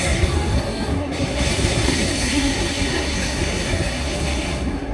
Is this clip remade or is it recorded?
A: remade